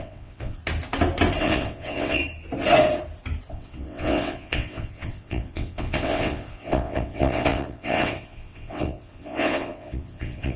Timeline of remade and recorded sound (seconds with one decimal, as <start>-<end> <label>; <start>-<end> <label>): 0.0-0.6 remade; 0.6-1.4 recorded; 1.4-2.2 remade; 2.2-3.5 recorded; 3.5-10.6 remade